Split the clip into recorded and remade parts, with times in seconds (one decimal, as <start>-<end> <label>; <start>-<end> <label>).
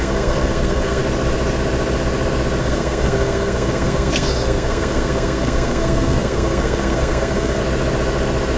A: 0.0-1.0 remade; 1.0-2.6 recorded; 2.6-7.6 remade; 7.6-8.6 recorded